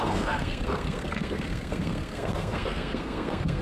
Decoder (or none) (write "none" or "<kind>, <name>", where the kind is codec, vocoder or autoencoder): codec, SNAC